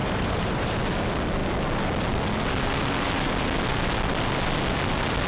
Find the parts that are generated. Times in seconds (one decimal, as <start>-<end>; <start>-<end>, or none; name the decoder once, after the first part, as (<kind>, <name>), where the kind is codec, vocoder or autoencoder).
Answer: 0.0-0.8 (vocoder, BigVGAN v2)